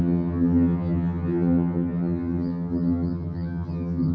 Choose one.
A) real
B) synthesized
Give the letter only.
B